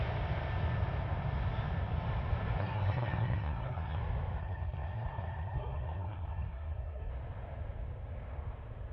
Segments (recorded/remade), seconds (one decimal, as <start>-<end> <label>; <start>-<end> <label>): 0.0-2.6 recorded; 2.6-4.0 remade; 4.0-4.4 recorded; 4.4-7.1 remade; 7.1-8.9 recorded